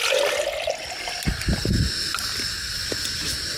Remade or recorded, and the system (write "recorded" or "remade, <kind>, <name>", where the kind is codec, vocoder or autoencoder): recorded